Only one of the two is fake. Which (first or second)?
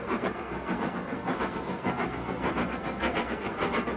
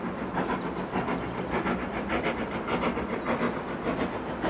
first